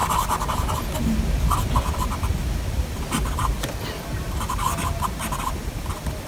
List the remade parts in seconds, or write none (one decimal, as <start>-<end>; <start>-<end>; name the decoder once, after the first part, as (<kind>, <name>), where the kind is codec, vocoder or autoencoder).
none